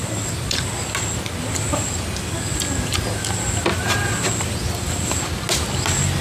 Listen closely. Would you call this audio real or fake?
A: real